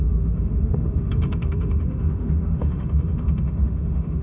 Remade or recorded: remade